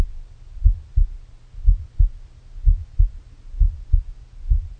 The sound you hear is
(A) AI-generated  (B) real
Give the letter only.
B